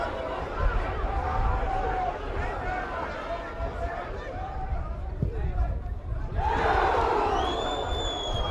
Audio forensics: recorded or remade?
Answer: remade